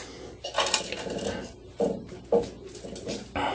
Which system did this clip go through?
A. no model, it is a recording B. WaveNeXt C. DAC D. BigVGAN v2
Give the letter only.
A